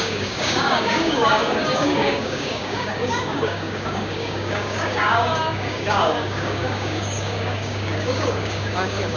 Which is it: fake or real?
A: fake